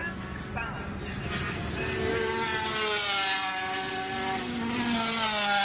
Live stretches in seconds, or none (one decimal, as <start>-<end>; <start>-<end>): 0.0-5.6

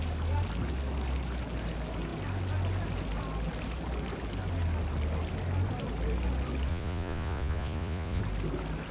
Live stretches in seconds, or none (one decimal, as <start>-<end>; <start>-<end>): 0.0-6.7; 8.2-8.9

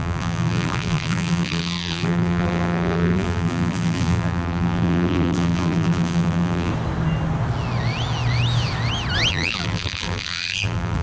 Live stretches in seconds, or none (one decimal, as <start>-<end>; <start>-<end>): 6.7-9.3

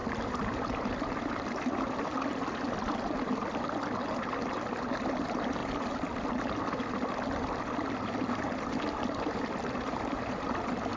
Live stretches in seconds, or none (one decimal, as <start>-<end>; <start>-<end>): 0.0-11.0

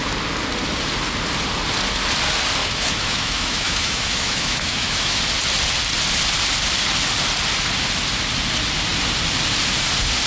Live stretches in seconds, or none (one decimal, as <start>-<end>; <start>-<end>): 0.0-2.6; 5.2-10.3

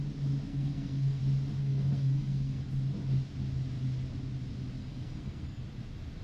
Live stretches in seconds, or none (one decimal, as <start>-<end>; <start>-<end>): 0.0-0.5; 1.2-1.6; 2.6-4.8; 5.6-6.2

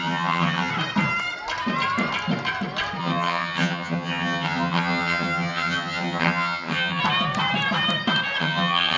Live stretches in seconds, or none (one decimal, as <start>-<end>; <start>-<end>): 0.7-3.0; 7.0-8.4